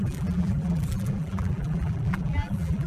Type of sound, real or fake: fake